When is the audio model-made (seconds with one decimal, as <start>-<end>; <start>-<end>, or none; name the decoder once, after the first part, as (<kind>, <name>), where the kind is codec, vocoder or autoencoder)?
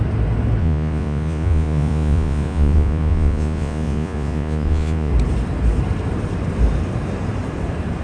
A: 0.6-5.1 (vocoder, Vocos)